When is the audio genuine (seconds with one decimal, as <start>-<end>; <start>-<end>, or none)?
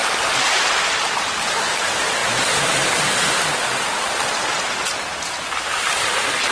0.0-1.0; 2.2-5.9